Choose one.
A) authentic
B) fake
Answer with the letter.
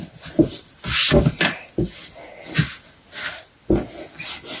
A